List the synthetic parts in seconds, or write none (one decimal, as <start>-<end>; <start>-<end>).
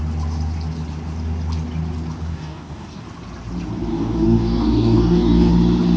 2.3-3.0; 3.9-5.5